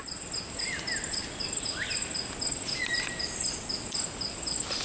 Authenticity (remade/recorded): recorded